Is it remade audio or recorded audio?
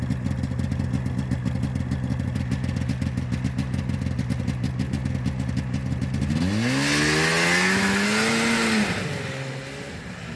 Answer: recorded